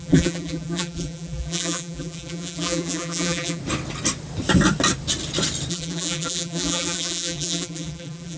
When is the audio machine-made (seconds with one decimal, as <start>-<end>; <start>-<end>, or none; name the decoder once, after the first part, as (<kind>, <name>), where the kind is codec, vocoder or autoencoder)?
0.0-3.6 (vocoder, BigVGAN v2); 5.7-8.4